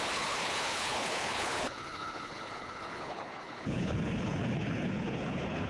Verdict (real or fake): fake